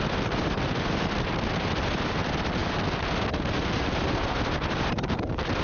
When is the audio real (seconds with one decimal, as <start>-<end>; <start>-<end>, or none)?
0.0-5.6